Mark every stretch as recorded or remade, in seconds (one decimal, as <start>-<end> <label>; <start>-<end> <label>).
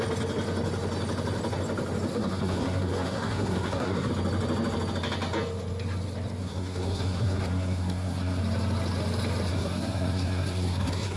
0.0-2.1 recorded; 2.1-4.1 remade; 4.1-6.4 recorded; 6.4-8.4 remade; 8.4-9.5 recorded; 9.5-11.2 remade